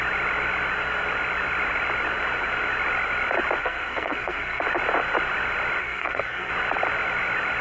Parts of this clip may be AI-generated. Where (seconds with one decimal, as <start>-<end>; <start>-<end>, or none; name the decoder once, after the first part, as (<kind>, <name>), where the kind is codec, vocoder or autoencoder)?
3.6-4.6 (codec, SNAC); 5.8-6.5